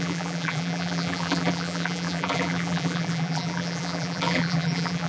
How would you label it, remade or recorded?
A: remade